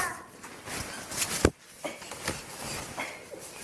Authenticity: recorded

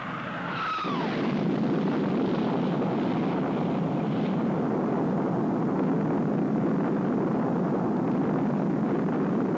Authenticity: recorded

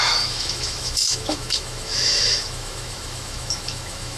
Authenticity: remade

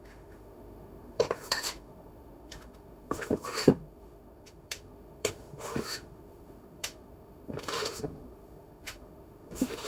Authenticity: remade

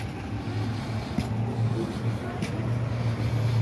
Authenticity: recorded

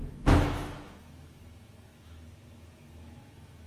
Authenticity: remade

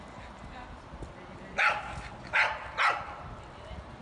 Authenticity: recorded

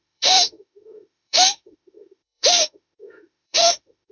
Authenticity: remade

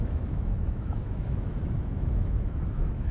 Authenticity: remade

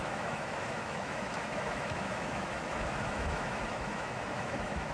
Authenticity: remade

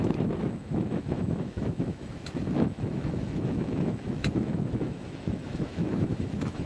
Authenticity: remade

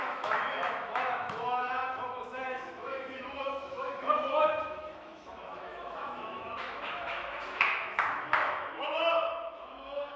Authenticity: remade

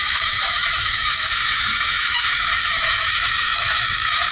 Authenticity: remade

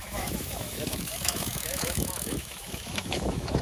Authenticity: remade